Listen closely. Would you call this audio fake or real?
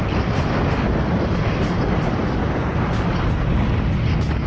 real